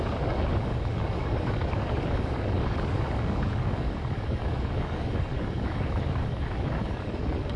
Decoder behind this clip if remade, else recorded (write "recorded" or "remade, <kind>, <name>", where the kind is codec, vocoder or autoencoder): remade, codec, DAC